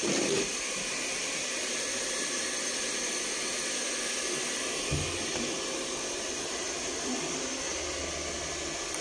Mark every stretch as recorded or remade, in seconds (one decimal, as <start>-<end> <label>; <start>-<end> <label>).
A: 0.0-0.5 recorded; 0.5-3.4 remade; 3.4-9.0 recorded